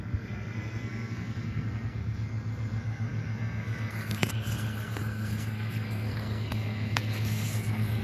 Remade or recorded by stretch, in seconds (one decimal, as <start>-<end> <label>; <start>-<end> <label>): 0.0-8.0 remade